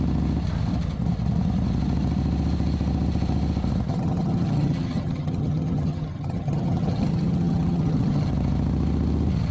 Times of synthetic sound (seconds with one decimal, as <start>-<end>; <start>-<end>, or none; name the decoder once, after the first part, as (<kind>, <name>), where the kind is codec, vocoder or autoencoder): 3.9-8.3 (vocoder, HiFi-GAN)